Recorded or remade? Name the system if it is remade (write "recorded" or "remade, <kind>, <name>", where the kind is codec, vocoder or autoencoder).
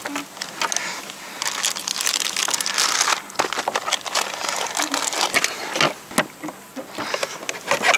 recorded